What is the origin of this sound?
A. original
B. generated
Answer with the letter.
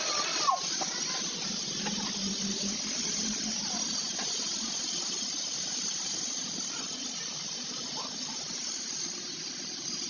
A